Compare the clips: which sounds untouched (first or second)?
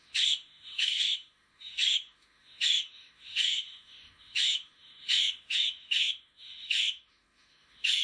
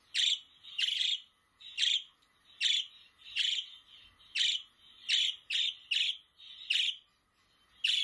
second